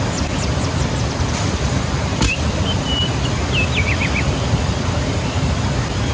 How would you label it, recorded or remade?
remade